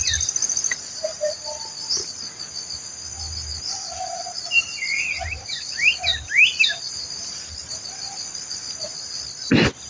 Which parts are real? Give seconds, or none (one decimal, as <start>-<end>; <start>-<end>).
0.0-3.5; 4.9-9.9